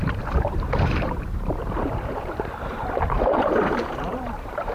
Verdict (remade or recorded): remade